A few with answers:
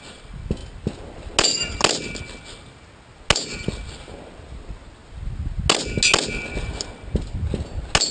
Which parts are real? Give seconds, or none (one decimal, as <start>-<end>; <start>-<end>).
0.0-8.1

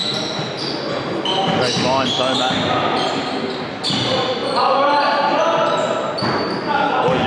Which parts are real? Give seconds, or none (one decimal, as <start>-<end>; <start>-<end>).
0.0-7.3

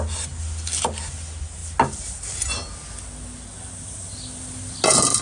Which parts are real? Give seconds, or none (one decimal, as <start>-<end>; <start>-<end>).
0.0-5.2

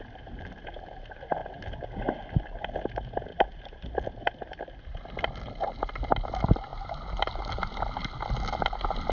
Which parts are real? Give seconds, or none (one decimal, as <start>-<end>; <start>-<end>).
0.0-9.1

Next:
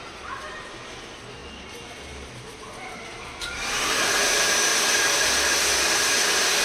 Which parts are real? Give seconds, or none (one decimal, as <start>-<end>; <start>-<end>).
0.0-6.6

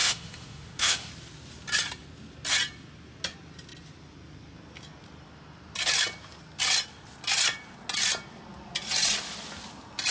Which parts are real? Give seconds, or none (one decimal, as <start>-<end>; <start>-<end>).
1.1-10.1

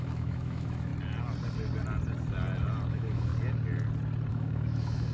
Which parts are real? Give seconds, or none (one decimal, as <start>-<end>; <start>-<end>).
0.9-2.9; 3.3-4.3

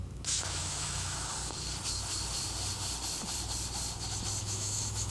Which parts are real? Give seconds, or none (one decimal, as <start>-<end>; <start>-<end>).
1.3-4.4